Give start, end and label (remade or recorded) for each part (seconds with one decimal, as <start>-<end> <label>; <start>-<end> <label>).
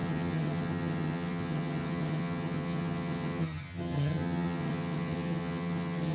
0.0-6.1 remade